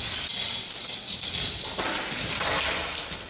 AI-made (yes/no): no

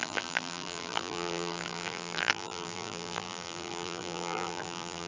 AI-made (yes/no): yes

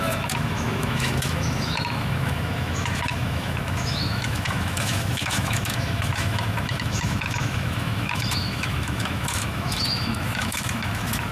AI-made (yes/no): yes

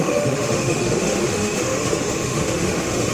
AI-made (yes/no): yes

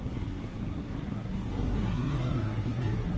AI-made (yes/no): yes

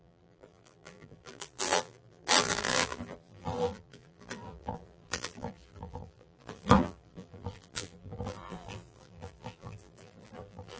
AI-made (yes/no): yes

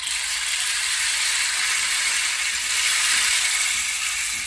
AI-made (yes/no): no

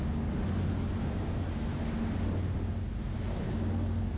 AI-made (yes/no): no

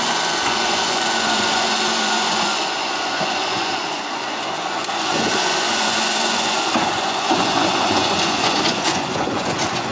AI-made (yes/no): yes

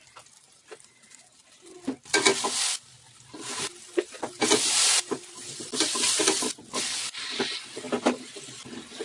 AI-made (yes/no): no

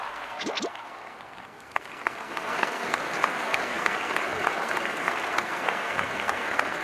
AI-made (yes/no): yes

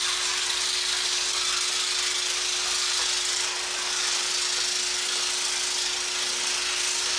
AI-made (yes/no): no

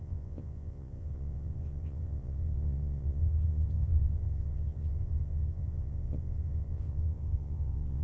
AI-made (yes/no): yes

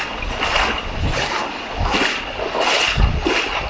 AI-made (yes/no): no